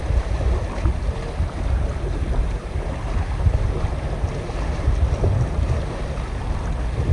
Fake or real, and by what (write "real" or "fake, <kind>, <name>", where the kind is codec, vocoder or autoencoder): real